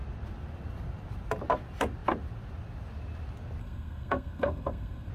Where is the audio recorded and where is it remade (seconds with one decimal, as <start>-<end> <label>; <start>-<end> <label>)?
0.0-3.6 recorded; 3.6-5.1 remade

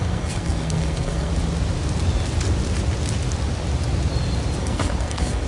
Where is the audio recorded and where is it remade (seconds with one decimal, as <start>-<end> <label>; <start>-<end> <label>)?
0.0-1.3 remade; 1.3-4.6 recorded; 4.6-5.5 remade

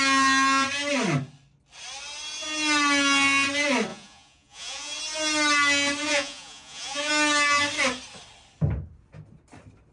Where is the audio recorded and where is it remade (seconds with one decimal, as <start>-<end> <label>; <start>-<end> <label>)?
0.0-3.9 recorded; 3.9-5.0 remade; 5.0-6.0 recorded; 6.0-7.1 remade; 7.1-9.9 recorded

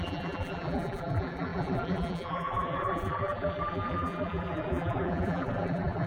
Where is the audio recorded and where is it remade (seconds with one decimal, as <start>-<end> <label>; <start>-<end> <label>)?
0.0-6.1 remade

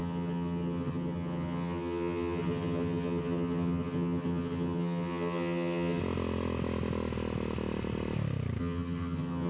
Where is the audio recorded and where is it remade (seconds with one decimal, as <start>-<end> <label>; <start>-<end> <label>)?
0.0-6.0 remade; 6.0-8.6 recorded; 8.6-9.5 remade

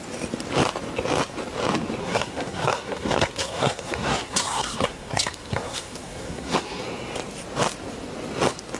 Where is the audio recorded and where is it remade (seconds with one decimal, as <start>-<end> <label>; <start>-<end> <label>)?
0.0-2.0 recorded; 2.0-6.8 remade; 6.8-8.8 recorded